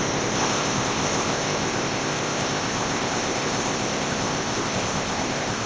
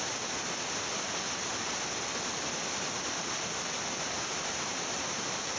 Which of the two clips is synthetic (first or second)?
first